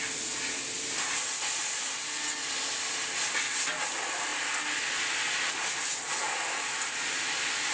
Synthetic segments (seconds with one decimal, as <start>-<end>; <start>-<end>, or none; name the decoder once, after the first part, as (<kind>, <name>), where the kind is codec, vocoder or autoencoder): none